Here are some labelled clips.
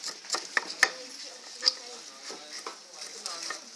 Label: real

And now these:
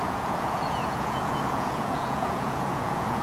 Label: fake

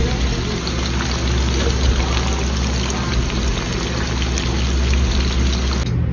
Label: real